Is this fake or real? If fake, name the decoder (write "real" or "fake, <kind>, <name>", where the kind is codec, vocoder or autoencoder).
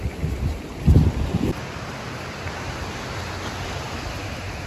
real